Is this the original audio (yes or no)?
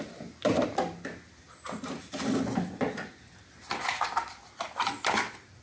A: yes